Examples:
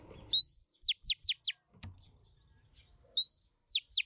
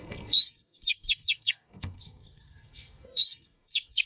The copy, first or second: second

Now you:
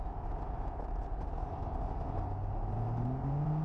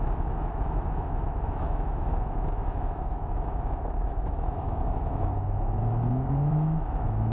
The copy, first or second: second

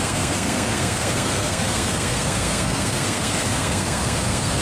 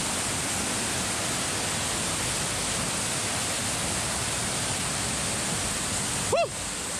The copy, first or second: first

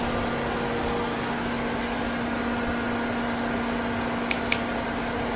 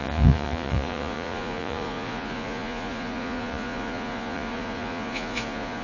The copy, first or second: second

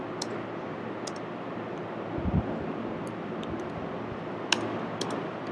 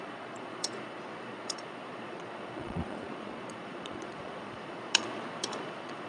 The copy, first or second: second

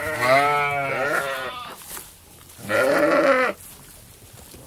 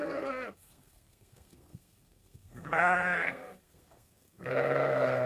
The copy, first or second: second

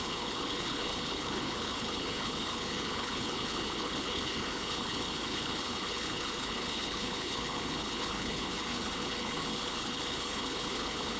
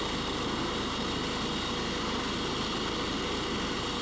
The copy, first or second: first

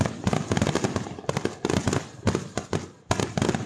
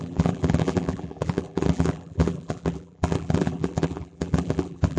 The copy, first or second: second